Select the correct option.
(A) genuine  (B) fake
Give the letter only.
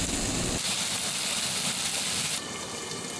A